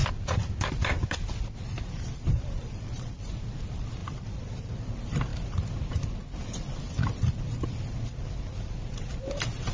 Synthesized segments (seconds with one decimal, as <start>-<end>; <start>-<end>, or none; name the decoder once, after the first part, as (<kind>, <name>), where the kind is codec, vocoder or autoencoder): 0.0-3.3 (vocoder, BigVGAN v2); 4.0-4.6; 6.4-7.6